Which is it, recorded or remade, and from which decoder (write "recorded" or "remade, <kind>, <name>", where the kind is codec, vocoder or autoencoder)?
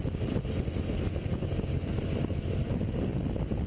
recorded